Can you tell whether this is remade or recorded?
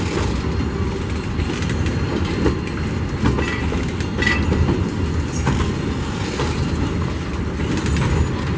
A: recorded